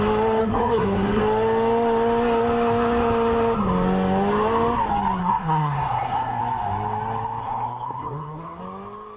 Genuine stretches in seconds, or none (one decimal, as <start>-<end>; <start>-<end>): 0.0-0.4; 1.2-5.2; 6.4-7.4; 8.6-9.2